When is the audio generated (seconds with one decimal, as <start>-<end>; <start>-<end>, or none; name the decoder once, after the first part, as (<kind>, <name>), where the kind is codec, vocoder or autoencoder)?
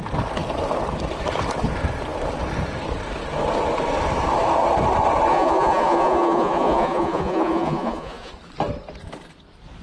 5.3-8.3 (vocoder, Vocos)